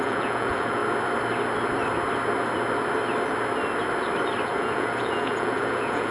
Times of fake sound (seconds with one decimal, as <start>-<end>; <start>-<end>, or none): 0.0-0.8; 4.5-6.1